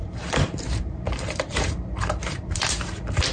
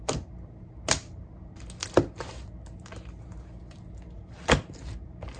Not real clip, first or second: first